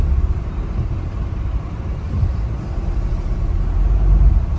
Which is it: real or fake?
fake